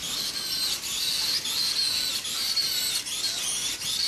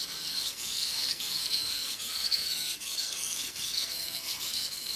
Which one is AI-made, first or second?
second